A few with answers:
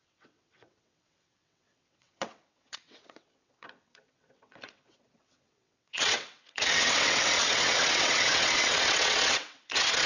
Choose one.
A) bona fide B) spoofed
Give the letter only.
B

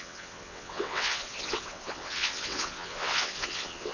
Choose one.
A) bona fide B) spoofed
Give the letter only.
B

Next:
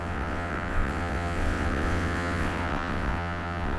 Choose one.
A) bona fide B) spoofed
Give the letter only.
B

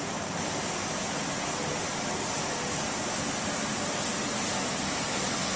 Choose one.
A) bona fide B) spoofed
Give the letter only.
A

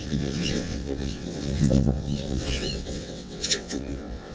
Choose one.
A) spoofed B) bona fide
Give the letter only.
A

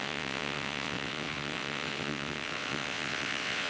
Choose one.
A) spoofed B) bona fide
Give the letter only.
A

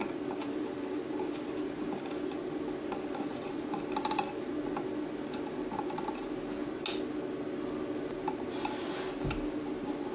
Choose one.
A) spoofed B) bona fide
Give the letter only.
B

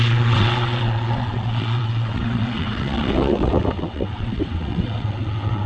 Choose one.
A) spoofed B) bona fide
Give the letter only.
A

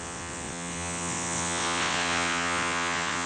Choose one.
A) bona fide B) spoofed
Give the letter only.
B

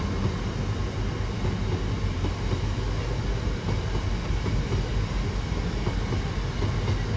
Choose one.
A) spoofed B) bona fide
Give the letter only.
B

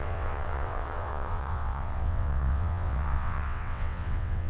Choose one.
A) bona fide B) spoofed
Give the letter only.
B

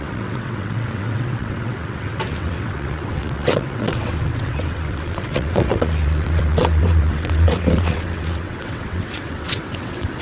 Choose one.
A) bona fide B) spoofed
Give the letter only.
B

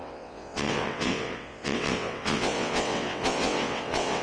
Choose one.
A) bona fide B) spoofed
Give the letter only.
B